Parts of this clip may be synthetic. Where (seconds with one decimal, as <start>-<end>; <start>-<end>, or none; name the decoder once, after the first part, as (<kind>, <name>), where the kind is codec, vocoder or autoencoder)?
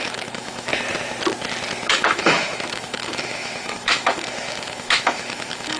0.0-0.7 (autoencoder, DAC-VAE); 1.9-5.8